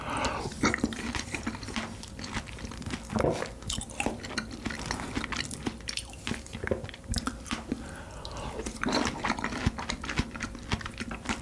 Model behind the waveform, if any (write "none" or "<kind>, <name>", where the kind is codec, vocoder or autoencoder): none